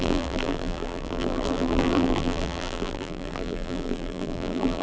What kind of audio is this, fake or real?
fake